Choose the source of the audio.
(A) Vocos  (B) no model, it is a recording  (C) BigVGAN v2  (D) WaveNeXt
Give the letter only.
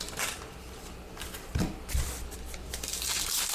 B